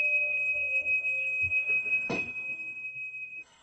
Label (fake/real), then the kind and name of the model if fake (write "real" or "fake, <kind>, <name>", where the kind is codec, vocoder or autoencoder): fake, codec, SNAC